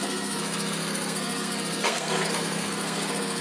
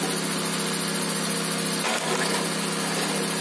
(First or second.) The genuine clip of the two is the second